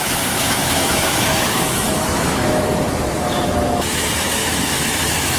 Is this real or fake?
fake